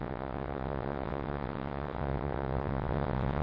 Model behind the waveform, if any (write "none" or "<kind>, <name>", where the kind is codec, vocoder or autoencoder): vocoder, WaveNeXt